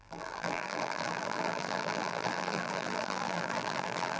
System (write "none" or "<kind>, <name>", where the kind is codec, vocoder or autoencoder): vocoder, BigVGAN v2